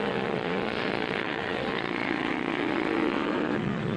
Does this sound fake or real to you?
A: fake